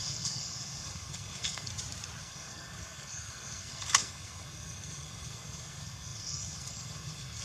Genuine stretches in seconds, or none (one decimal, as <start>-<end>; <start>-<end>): 1.7-2.2